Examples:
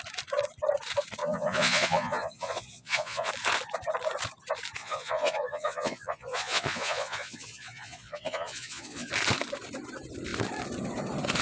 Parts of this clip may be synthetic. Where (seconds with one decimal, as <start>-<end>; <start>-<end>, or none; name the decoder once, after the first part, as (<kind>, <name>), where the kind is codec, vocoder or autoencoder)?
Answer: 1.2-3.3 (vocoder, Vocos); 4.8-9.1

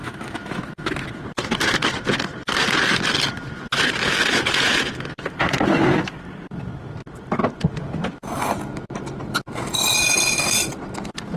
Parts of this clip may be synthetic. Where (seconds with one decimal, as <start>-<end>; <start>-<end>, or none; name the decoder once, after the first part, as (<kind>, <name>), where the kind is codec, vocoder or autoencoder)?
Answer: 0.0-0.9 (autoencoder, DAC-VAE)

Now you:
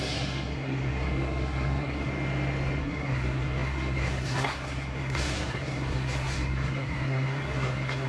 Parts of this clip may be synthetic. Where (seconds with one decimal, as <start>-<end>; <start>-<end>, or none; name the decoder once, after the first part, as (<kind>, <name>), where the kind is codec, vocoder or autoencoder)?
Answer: 0.0-2.1 (codec, SNAC); 2.8-8.1